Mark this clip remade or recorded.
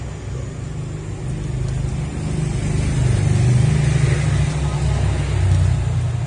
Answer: recorded